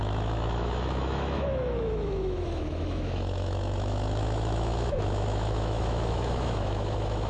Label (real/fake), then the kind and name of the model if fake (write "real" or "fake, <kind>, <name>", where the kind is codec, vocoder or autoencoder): fake, autoencoder, DAC-VAE